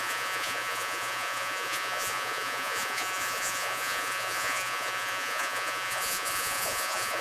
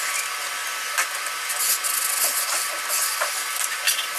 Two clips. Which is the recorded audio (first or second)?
second